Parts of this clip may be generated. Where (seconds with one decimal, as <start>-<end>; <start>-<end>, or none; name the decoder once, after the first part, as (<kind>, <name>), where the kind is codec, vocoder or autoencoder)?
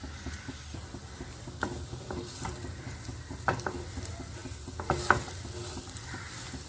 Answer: none